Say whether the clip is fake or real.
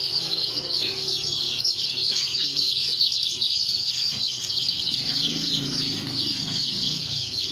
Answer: fake